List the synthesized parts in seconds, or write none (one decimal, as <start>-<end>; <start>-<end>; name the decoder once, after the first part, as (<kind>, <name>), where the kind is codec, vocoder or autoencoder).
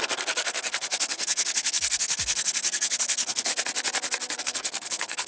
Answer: 0.0-3.5 (codec, SNAC); 4.4-5.3